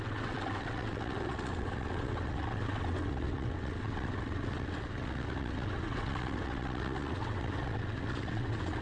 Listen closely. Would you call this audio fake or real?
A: fake